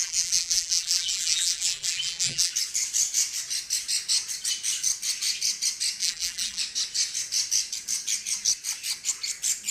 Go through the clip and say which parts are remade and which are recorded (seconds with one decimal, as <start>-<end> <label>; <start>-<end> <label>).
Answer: 0.0-2.5 remade; 2.5-6.0 recorded; 6.0-6.6 remade; 6.6-9.7 recorded